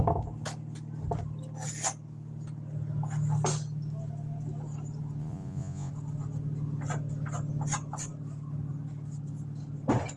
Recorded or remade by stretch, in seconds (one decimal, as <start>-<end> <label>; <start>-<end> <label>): 0.0-5.2 recorded; 5.2-5.9 remade; 5.9-10.2 recorded